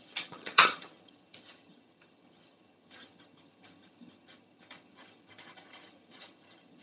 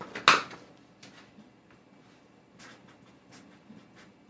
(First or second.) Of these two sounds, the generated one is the first